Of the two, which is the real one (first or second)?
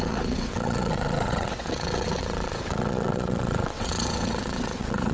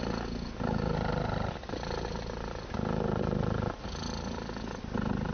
second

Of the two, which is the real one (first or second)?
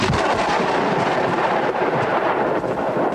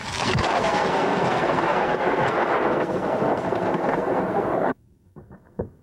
first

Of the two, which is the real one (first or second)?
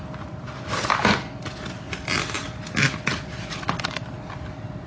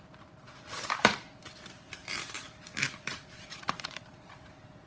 first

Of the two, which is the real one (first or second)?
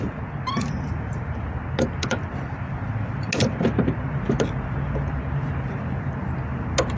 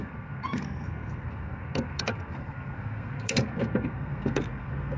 first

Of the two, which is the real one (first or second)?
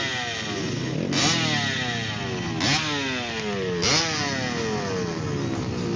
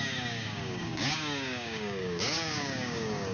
first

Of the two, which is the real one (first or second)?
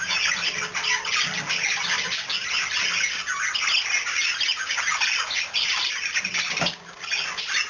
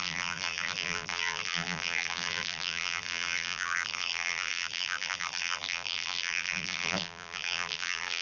first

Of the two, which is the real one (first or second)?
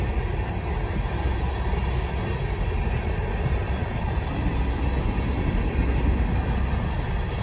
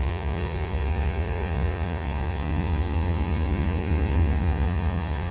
first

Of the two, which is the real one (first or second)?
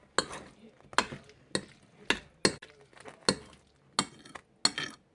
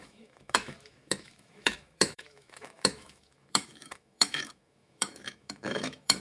first